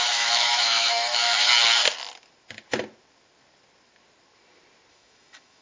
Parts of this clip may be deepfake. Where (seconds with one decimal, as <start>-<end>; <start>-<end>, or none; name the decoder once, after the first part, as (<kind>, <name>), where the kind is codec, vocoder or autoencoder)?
0.0-1.5 (autoencoder, DAC-VAE); 4.9-5.6